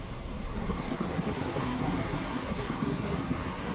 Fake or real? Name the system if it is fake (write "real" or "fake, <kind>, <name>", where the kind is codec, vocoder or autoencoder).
fake, codec, SNAC